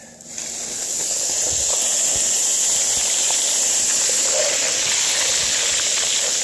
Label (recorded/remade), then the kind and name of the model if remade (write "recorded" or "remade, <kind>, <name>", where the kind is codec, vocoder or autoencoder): recorded